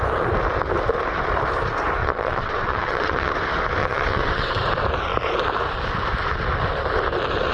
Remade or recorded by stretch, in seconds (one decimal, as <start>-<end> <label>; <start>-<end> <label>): 0.0-2.0 recorded; 2.0-3.3 remade; 3.3-3.8 recorded; 3.8-4.6 remade; 4.6-7.5 recorded